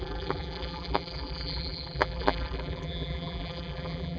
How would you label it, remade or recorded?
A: remade